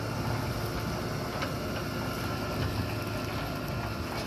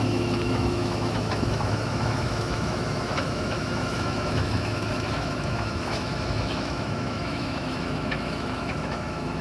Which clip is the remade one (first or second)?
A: second